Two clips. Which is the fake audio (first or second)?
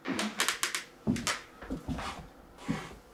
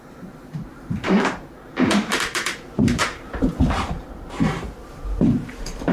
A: second